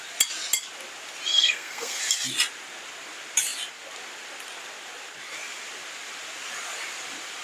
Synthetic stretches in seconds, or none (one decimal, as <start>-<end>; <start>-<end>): 1.3-2.0